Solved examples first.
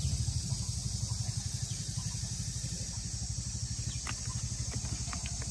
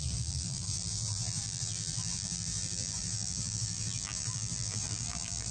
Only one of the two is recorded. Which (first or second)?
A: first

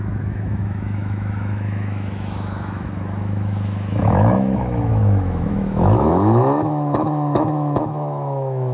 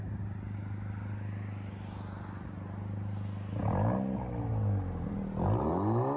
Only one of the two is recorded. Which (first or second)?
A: second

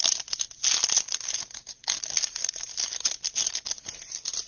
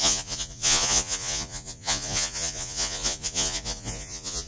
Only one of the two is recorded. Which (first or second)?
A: first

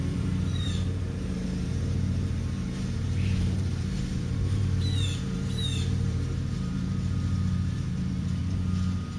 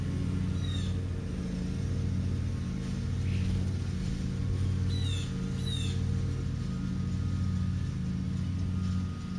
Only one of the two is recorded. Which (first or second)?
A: second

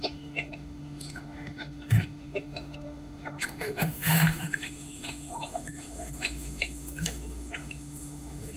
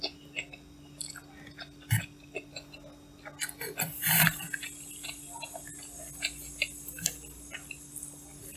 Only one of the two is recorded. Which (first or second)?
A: second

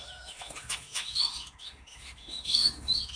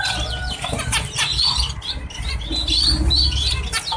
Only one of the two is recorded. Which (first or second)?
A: second